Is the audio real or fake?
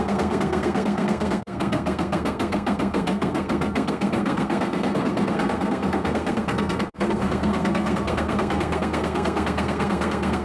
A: fake